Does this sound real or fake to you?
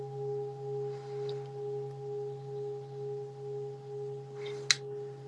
real